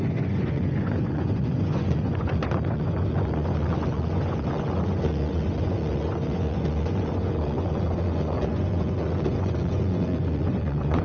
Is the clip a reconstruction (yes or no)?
yes